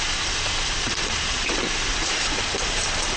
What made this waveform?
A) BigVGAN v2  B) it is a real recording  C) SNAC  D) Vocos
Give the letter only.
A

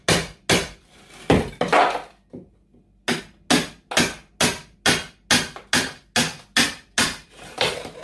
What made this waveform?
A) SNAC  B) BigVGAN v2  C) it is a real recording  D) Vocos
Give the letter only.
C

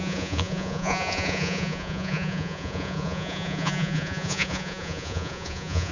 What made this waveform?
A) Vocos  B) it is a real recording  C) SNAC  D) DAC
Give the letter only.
A